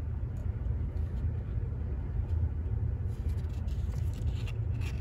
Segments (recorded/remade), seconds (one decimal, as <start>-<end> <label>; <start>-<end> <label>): 0.0-5.0 recorded